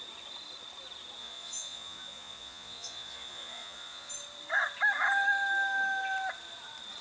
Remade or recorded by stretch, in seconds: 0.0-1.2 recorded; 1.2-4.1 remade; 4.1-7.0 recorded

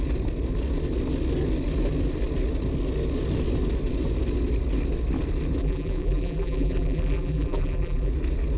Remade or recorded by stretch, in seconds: 0.0-5.6 recorded; 5.6-8.1 remade; 8.1-8.6 recorded

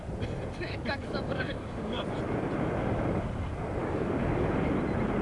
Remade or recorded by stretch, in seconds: 0.0-0.7 recorded; 0.7-2.0 remade; 2.0-3.8 recorded; 3.8-4.6 remade; 4.6-5.2 recorded

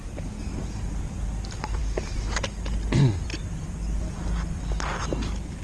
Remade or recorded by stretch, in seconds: 0.0-5.6 recorded